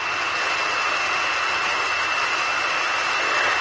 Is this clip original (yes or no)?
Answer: yes